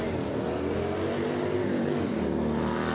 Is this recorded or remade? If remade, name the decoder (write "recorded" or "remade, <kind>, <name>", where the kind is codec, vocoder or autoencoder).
recorded